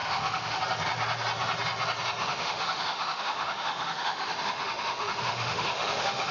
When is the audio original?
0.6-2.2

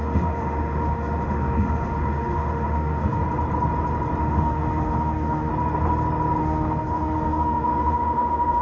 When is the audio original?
3.2-4.2; 5.5-6.4